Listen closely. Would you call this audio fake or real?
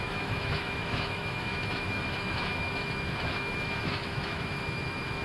fake